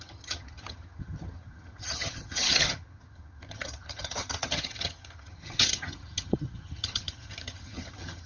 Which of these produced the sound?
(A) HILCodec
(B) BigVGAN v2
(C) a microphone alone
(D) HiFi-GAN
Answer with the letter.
D